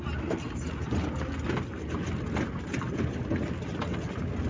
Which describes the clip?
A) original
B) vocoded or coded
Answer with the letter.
A